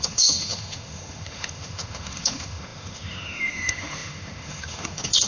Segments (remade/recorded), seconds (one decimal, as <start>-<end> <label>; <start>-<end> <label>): 0.0-5.3 remade